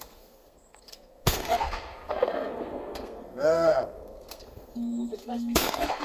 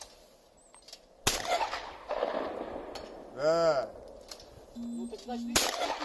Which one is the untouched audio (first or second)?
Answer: second